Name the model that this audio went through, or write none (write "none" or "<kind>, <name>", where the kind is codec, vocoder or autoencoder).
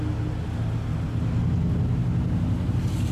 none